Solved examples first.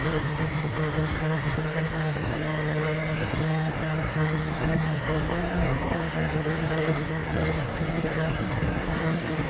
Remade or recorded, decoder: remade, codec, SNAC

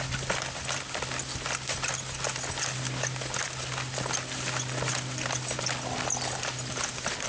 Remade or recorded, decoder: recorded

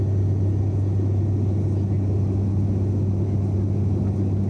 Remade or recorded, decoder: recorded